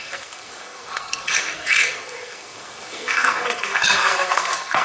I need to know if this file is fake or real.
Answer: fake